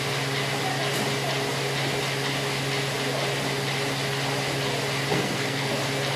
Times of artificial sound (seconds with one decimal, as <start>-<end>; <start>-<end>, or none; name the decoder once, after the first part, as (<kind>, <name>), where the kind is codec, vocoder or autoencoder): 5.1-5.7 (codec, SNAC)